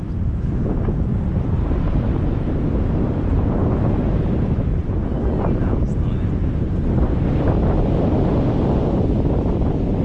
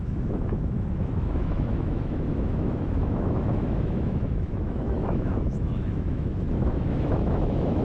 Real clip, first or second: first